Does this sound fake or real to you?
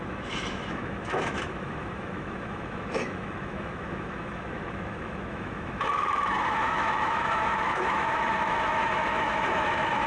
fake